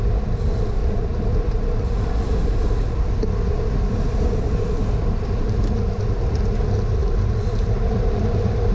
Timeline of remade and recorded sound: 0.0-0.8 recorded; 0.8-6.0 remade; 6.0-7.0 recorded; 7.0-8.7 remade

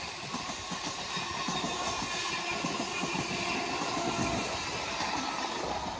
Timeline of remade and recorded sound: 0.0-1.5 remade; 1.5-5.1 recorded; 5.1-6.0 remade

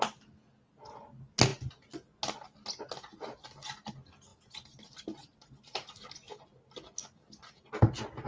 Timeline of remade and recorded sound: 0.0-4.3 recorded; 4.3-5.9 remade; 5.9-8.3 recorded